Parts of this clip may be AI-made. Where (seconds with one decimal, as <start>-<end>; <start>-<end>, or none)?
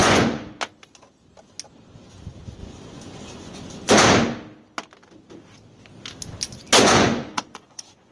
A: 0.0-0.6; 2.6-3.9; 6.8-8.1